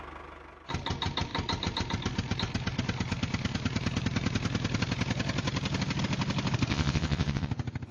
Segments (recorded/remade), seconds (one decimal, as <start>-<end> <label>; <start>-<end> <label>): 0.0-6.7 recorded; 6.7-7.5 remade; 7.5-7.9 recorded